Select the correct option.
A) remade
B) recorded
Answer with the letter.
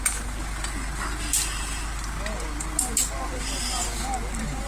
B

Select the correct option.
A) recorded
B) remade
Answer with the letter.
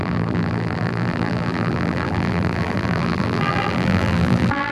B